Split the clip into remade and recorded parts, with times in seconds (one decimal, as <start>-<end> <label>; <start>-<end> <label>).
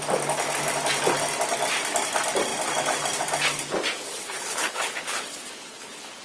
0.0-4.0 recorded; 4.0-6.2 remade